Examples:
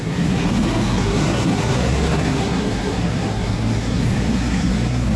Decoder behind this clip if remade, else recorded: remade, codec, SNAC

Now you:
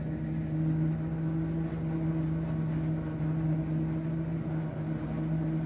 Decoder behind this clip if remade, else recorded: recorded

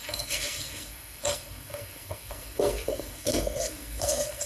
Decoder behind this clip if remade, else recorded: remade, codec, SNAC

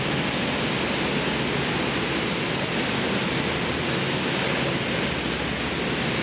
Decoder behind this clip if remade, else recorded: recorded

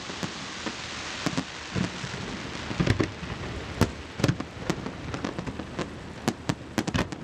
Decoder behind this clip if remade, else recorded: recorded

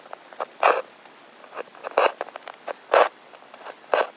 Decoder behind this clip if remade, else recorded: recorded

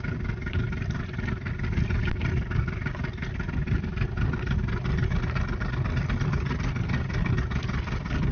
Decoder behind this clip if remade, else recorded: recorded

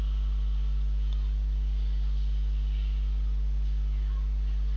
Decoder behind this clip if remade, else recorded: recorded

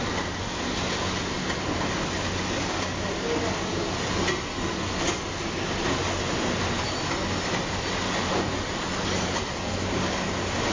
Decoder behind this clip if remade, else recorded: recorded